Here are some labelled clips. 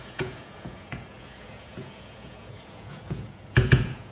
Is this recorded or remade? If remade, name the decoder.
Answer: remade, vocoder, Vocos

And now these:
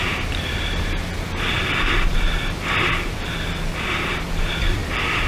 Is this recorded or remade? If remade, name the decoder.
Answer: remade, vocoder, BigVGAN v2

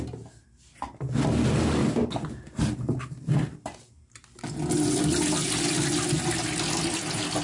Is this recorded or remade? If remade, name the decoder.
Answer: recorded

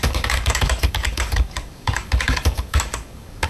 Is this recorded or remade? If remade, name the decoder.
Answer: remade, codec, DAC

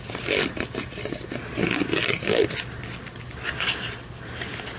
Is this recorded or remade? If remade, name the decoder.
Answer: recorded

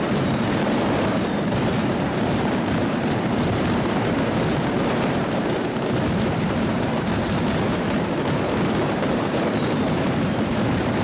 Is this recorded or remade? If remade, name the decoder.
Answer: remade, vocoder, BigVGAN v2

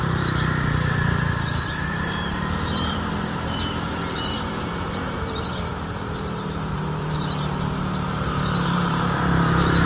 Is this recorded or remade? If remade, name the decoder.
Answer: remade, vocoder, BigVGAN v2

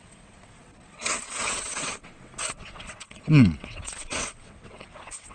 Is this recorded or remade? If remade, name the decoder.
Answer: remade, vocoder, WaveNeXt